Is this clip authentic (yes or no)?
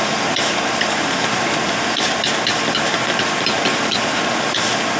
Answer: no